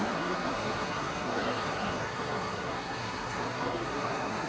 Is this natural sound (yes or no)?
no